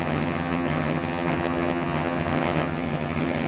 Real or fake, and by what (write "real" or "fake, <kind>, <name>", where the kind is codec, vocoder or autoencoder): fake, vocoder, HiFi-GAN